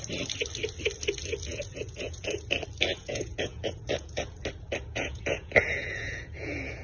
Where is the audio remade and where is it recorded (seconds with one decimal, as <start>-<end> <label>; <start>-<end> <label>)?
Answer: 0.0-1.5 recorded; 1.5-2.4 remade; 2.4-2.9 recorded; 2.9-4.2 remade; 4.2-4.9 recorded; 4.9-6.8 remade